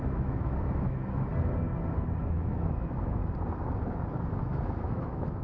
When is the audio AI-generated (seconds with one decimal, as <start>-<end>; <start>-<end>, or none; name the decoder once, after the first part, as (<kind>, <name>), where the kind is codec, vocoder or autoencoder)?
0.0-1.3 (autoencoder, DAC-VAE); 2.2-3.2; 4.4-5.4

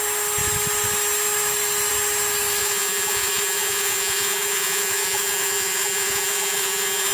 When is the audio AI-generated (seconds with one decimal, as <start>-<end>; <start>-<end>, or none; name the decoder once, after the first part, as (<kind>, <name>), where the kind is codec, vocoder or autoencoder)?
2.6-7.1 (vocoder, Vocos)

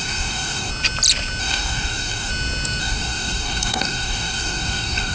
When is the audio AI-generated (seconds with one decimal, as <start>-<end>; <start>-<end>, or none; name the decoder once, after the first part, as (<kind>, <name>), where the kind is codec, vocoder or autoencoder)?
0.0-0.7 (codec, DAC); 1.4-2.3; 2.8-5.1

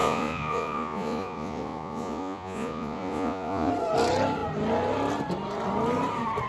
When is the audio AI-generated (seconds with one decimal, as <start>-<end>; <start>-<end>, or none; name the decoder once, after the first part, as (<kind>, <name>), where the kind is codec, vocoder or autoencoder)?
0.0-3.7 (vocoder, Vocos)

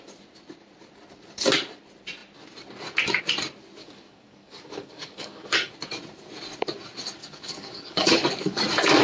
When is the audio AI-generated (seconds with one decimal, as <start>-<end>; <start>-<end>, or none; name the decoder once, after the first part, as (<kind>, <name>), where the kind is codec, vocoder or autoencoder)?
3.8-5.7 (codec, DAC); 7.2-8.6